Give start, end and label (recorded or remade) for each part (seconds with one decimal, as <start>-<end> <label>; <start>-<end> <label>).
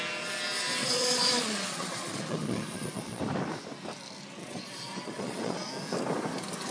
0.0-0.8 recorded; 0.8-3.2 remade; 3.2-4.4 recorded; 4.4-5.7 remade; 5.7-6.7 recorded